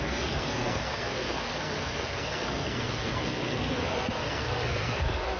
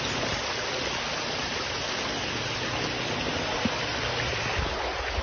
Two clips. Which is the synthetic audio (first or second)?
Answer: first